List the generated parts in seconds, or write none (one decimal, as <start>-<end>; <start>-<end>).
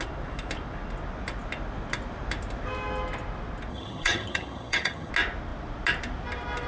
3.7-5.1